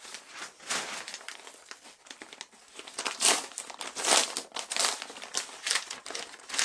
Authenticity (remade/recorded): recorded